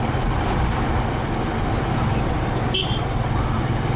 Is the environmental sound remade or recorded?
recorded